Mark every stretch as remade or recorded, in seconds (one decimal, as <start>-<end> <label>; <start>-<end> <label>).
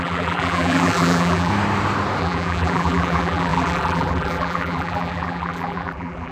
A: 0.0-1.5 remade; 1.5-2.2 recorded; 2.2-6.3 remade